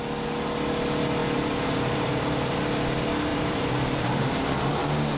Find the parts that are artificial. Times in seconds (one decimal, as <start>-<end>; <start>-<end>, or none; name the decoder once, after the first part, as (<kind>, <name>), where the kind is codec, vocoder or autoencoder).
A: 1.2-2.1 (vocoder, BigVGAN v2); 3.3-4.3